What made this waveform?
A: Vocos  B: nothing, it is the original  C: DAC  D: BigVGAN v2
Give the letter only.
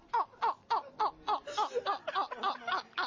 B